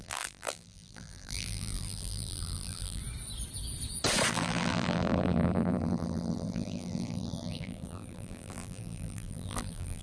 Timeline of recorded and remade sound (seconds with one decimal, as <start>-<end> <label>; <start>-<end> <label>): 0.0-3.0 remade; 3.0-4.3 recorded; 4.3-10.0 remade